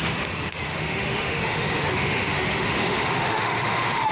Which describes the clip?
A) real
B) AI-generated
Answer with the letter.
B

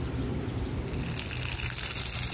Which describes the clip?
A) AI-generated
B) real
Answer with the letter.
B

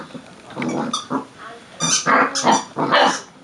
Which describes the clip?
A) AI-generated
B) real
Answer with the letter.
B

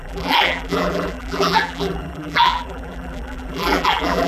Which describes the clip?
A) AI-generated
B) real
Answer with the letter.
A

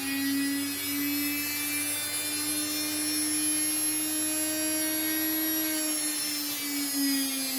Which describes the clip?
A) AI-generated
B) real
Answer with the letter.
B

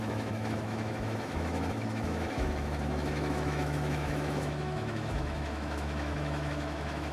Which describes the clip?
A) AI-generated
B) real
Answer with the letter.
A